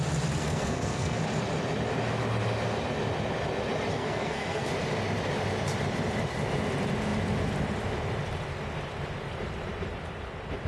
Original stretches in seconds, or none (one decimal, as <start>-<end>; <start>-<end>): 0.0-0.4; 1.2-3.9; 4.7-10.7